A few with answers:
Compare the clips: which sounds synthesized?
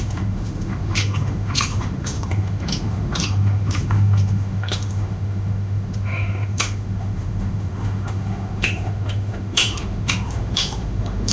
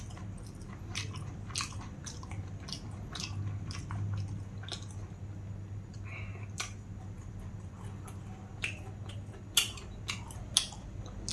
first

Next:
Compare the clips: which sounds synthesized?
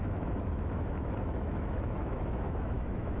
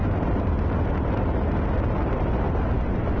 first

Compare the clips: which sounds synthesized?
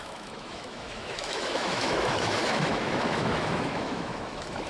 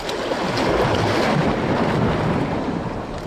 first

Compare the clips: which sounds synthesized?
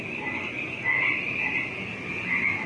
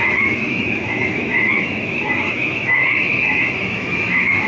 second